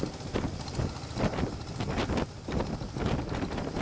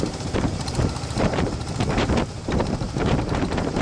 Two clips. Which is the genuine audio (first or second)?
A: first